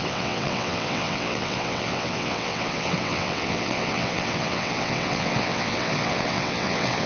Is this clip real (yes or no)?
no